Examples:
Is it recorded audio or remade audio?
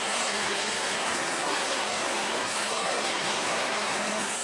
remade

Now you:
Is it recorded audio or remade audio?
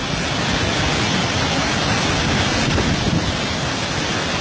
recorded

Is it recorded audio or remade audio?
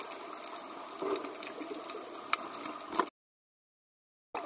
recorded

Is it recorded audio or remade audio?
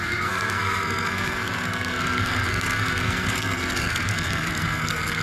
remade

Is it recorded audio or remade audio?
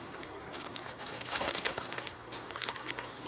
remade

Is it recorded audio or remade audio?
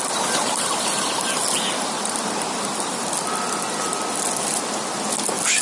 recorded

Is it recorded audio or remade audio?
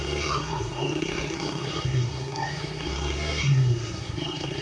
remade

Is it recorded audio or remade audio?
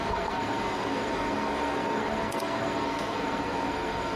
remade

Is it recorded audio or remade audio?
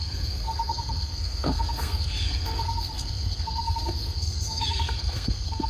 remade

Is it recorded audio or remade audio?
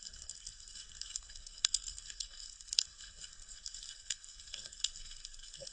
remade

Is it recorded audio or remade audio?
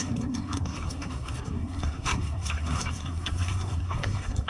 remade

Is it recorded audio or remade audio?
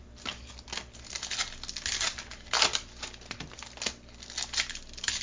recorded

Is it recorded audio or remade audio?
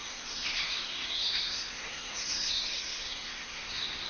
remade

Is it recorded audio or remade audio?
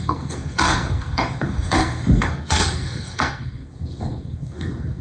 remade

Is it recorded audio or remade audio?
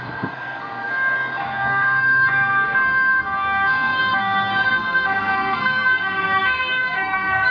remade